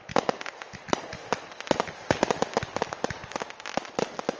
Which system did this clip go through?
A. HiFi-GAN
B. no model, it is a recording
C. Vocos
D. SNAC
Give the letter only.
B